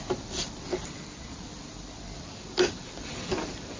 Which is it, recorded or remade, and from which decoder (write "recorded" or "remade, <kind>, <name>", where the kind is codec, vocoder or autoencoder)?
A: remade, vocoder, BigVGAN v2